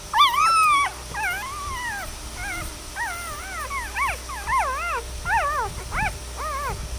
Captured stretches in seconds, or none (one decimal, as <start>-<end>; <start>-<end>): 0.0-7.0